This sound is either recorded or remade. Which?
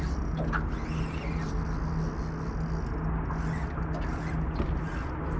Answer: recorded